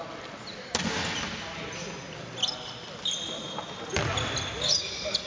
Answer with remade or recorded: recorded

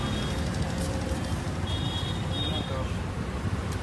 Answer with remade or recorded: recorded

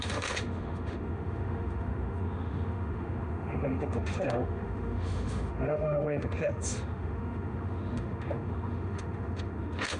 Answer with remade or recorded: remade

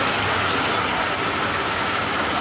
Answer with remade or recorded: recorded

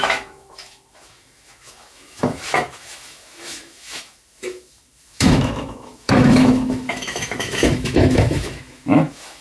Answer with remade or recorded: remade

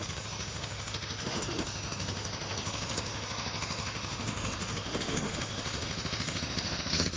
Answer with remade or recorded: remade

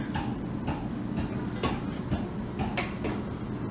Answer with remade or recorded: recorded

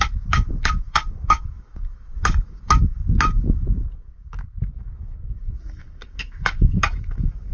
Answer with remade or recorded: remade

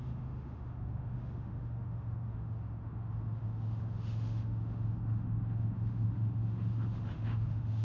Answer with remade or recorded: remade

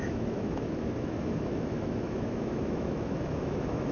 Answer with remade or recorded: remade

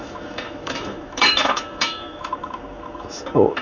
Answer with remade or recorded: remade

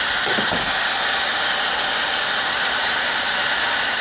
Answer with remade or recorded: recorded